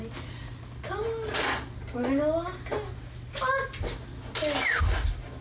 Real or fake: real